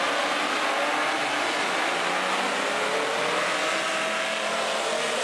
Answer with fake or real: real